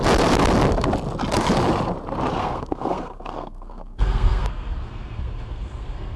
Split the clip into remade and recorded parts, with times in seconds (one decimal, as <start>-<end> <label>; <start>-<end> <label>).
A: 0.0-2.4 recorded; 2.4-6.2 remade